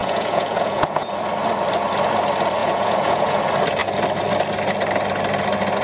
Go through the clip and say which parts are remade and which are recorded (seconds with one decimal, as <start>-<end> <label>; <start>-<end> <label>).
0.0-1.1 remade; 1.1-2.6 recorded; 2.6-3.4 remade; 3.4-5.8 recorded